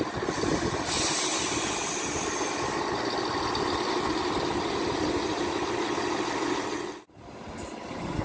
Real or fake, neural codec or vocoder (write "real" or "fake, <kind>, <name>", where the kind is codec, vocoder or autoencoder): real